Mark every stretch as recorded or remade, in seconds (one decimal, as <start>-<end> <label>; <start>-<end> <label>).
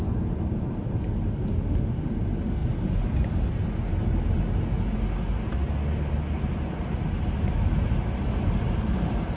0.0-1.5 recorded; 1.5-2.1 remade; 2.1-9.4 recorded